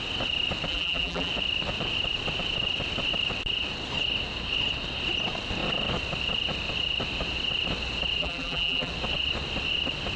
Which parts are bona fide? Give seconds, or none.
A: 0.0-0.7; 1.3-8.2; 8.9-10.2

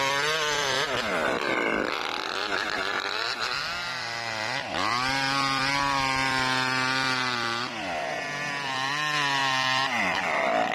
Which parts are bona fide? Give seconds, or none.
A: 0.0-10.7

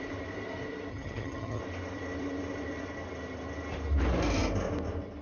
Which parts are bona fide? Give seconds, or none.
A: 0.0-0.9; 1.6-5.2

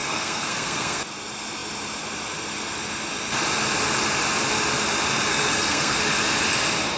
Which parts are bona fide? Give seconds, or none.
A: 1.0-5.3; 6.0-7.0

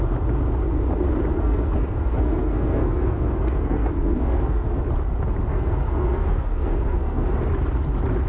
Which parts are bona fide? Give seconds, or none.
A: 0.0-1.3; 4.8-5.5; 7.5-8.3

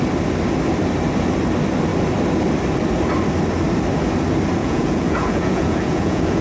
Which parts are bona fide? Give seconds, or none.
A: 0.0-4.6